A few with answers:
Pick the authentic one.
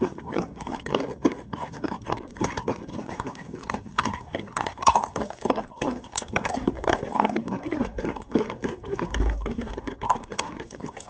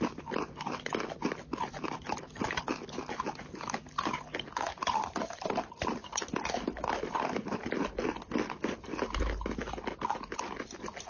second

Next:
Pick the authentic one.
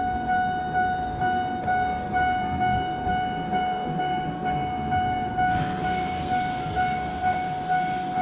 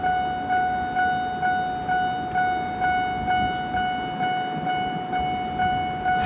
second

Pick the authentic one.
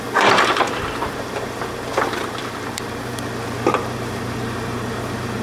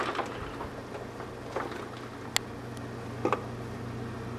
second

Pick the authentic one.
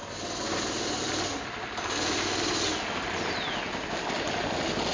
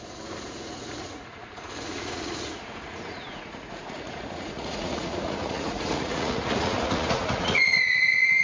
first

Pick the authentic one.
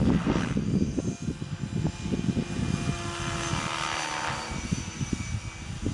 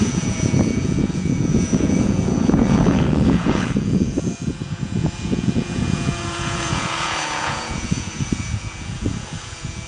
first